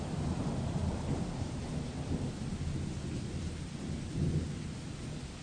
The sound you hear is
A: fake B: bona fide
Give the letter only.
B